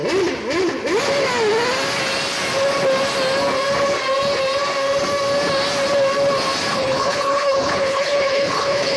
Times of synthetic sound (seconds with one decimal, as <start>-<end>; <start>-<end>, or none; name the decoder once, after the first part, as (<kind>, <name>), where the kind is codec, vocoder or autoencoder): 6.7-9.0 (codec, HILCodec)